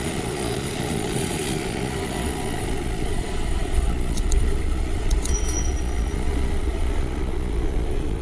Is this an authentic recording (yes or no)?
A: no